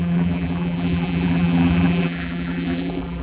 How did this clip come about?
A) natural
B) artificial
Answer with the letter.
B